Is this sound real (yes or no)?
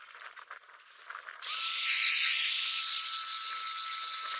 yes